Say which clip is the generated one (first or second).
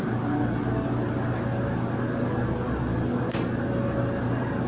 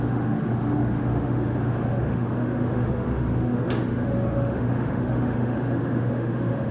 second